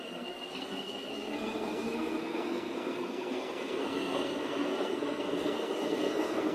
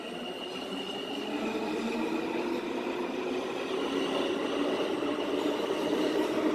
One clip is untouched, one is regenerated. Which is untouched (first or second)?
second